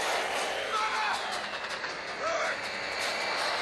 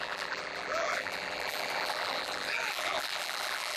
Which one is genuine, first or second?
first